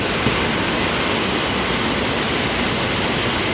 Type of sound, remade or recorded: recorded